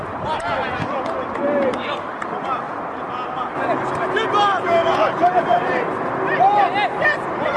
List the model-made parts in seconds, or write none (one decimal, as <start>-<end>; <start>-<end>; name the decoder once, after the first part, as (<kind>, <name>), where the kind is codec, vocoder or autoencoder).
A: 4.9-5.9 (vocoder, BigVGAN v2)